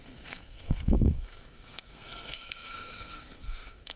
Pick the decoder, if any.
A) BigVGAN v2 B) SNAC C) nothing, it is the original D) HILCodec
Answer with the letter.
B